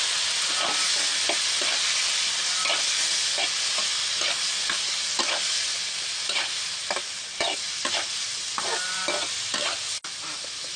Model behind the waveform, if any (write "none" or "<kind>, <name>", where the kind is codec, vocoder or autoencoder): none